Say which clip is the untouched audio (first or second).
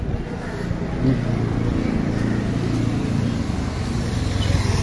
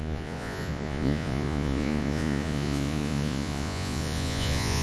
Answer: first